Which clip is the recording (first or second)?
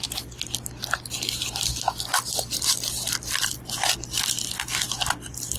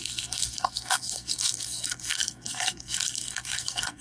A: first